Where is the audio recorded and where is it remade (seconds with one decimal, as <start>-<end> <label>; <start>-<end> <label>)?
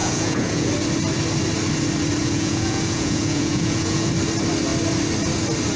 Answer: 0.0-0.7 remade; 0.7-2.2 recorded; 2.2-4.1 remade; 4.1-5.8 recorded